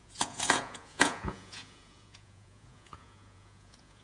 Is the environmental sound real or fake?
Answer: fake